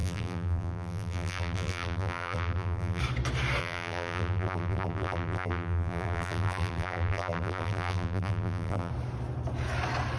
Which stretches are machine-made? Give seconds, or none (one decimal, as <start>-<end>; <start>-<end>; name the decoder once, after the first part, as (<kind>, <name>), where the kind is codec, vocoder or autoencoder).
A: 0.0-3.0 (vocoder, BigVGAN v2); 3.6-8.9